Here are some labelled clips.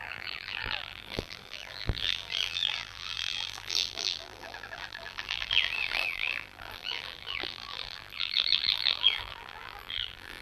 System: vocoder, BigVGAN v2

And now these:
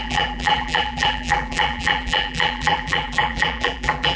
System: vocoder, BigVGAN v2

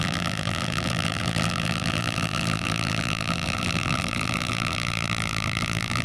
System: vocoder, BigVGAN v2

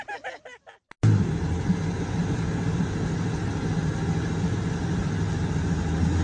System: none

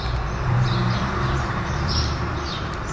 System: vocoder, BigVGAN v2